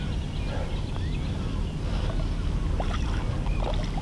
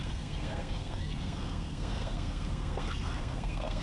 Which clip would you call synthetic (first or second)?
second